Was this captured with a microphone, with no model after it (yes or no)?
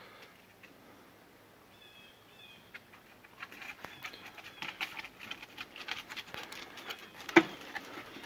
yes